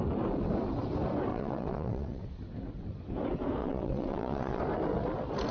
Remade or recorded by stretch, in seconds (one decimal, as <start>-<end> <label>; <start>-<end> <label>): 0.0-1.3 recorded; 1.3-2.2 remade; 2.2-3.6 recorded; 3.6-4.6 remade; 4.6-5.5 recorded